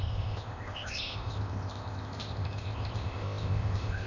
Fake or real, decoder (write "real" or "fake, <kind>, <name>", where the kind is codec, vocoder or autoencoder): fake, codec, ZipCodec